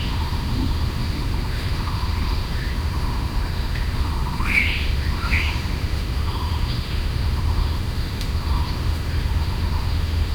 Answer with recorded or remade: remade